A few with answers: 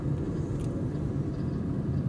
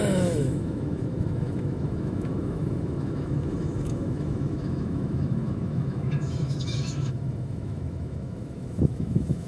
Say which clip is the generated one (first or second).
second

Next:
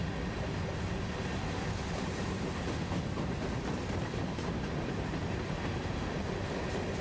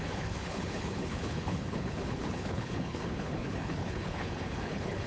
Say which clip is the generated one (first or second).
second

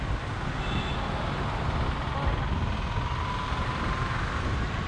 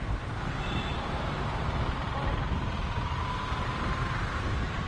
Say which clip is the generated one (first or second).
second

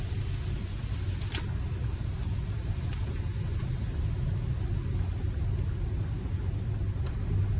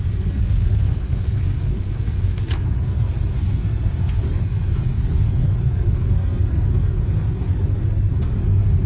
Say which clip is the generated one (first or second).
second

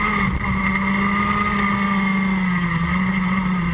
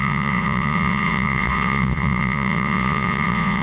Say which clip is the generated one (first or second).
second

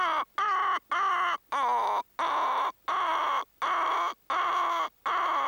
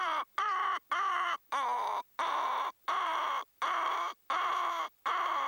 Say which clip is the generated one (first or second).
second